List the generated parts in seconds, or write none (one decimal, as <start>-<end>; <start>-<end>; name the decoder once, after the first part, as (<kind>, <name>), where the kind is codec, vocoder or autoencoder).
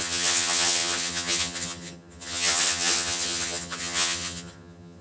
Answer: 0.0-5.0 (vocoder, HiFi-GAN)